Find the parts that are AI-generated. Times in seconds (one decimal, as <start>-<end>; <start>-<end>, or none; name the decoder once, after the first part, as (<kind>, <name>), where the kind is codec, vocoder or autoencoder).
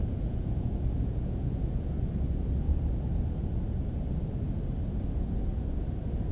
0.0-2.1 (vocoder, Vocos)